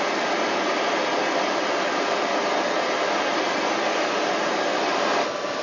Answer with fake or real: real